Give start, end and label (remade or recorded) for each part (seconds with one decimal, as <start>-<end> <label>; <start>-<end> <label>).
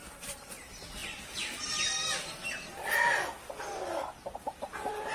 0.0-5.1 recorded